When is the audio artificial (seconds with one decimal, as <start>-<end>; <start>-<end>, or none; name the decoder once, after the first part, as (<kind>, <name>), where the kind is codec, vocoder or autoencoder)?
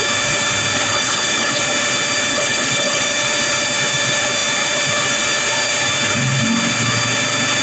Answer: 0.9-1.6 (codec, HILCodec); 2.3-3.0